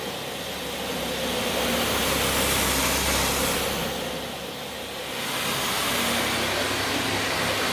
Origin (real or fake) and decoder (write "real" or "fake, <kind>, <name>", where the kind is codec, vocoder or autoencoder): real